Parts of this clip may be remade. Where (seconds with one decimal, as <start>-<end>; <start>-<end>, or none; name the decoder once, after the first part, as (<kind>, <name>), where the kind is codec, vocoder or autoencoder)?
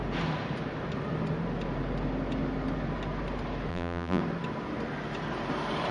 3.7-4.2 (vocoder, BigVGAN v2)